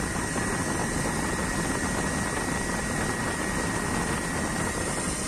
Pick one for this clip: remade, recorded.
recorded